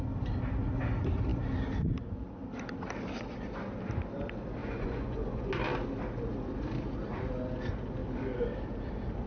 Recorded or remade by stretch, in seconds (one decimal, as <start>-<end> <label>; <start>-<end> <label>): 0.0-4.6 recorded; 4.6-5.5 remade; 5.5-9.3 recorded